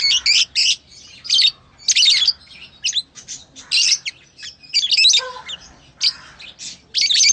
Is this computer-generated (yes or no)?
no